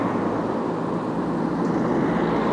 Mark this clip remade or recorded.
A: recorded